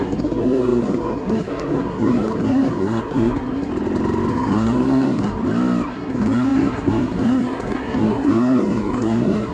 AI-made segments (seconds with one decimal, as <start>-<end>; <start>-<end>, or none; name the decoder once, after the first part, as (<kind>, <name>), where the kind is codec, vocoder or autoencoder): 0.0-3.7 (codec, SNAC); 4.3-5.4; 5.9-9.5